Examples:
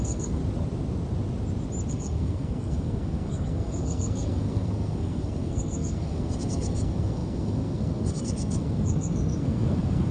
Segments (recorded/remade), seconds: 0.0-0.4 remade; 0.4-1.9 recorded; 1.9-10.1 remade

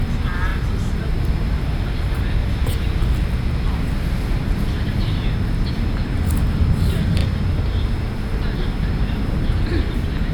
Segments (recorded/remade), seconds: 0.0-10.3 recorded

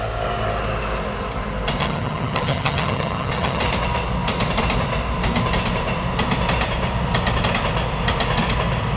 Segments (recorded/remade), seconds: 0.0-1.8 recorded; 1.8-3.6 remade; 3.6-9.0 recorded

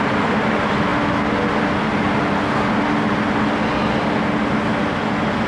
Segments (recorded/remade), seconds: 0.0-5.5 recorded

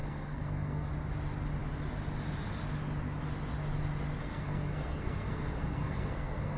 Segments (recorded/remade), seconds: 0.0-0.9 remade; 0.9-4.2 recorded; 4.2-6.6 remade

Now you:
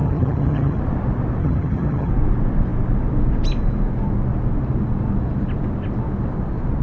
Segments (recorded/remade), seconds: 0.0-0.8 remade; 0.8-1.4 recorded; 1.4-2.1 remade; 2.1-6.8 recorded